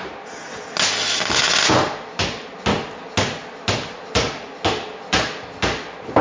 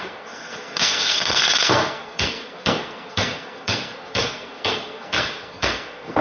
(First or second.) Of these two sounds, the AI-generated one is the second